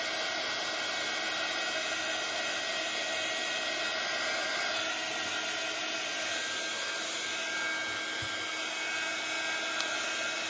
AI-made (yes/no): no